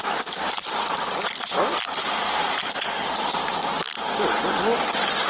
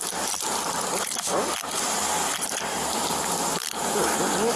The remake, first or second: second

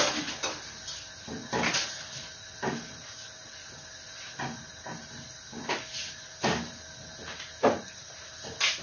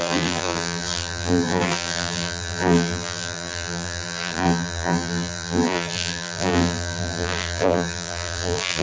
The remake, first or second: second